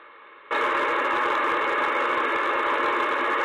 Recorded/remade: recorded